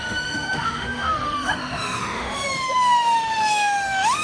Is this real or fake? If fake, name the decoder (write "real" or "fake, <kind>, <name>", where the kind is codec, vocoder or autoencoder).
fake, autoencoder, DAC-VAE